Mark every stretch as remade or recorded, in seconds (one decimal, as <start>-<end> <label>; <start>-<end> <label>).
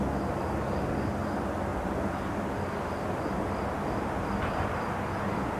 0.0-5.6 recorded